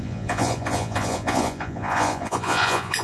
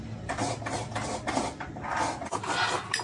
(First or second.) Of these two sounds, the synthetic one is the first